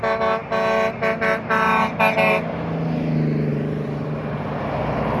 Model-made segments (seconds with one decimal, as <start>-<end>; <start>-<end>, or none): 3.5-4.2